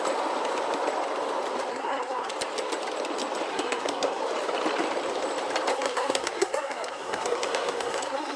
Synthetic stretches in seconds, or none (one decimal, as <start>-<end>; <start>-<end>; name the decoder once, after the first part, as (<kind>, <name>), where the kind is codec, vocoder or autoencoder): 1.7-2.3 (codec, SNAC); 3.5-4.2; 5.7-8.4